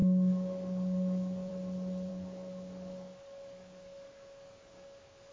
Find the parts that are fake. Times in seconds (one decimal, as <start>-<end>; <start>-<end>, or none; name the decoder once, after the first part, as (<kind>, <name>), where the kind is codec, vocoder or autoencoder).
0.0-1.5 (codec, DAC); 2.1-5.3